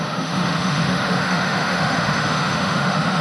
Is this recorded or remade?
remade